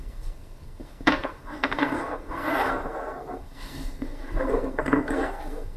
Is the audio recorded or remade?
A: remade